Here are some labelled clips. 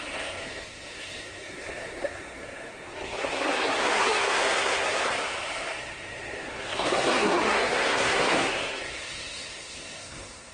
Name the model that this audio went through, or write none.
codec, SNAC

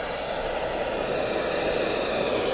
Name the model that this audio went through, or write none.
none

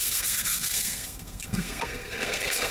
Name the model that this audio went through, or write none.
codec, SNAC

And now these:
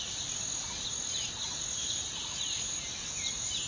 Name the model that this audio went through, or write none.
none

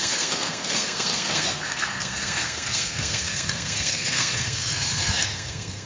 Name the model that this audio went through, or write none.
codec, SNAC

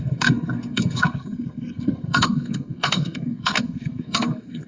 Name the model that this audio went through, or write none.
codec, SNAC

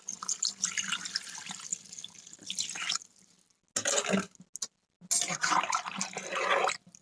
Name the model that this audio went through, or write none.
none